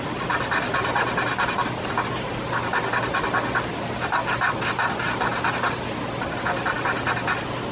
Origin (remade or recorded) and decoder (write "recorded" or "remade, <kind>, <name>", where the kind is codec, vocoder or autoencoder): recorded